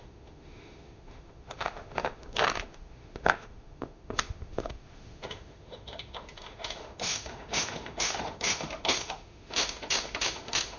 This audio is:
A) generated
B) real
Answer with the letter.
A